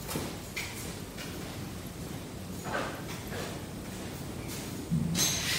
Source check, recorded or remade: recorded